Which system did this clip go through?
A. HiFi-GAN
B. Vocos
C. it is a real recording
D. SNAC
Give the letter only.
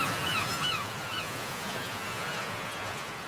B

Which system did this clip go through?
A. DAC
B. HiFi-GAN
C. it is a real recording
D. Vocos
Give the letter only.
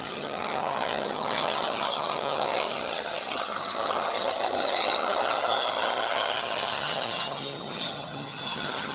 B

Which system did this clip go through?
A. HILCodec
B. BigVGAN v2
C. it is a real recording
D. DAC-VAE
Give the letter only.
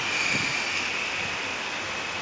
C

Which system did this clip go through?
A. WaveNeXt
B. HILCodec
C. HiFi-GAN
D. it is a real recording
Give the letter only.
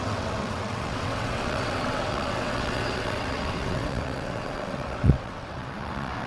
A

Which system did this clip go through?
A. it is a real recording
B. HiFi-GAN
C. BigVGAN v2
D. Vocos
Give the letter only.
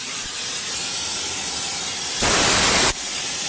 A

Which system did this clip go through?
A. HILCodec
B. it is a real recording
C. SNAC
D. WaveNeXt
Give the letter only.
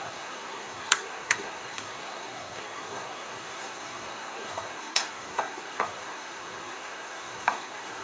C